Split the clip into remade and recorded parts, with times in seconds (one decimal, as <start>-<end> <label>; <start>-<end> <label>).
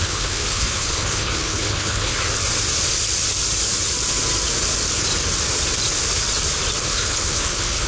0.0-2.1 remade; 2.1-6.8 recorded; 6.8-7.9 remade